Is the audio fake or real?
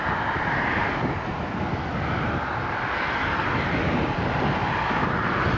real